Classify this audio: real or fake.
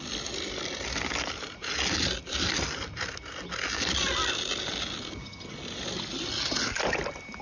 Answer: real